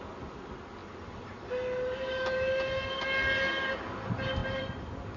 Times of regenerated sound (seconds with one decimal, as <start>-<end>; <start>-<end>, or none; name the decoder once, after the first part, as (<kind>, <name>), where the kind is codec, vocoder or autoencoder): none